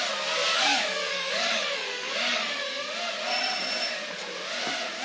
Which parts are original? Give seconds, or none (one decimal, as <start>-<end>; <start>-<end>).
0.0-0.5; 3.0-5.0